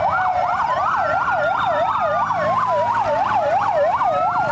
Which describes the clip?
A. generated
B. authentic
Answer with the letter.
B